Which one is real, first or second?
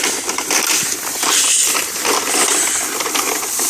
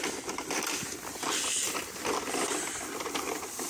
first